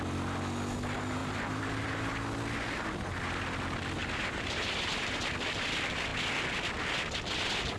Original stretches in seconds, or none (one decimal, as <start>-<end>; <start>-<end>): 0.0-1.2; 2.1-4.0; 5.2-7.8